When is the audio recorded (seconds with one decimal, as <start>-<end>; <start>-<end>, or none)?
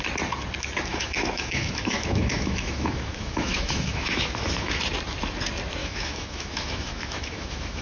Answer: 0.0-0.9; 4.8-5.8